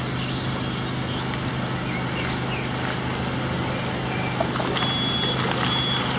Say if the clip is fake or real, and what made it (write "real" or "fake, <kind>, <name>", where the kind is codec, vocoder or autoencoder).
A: real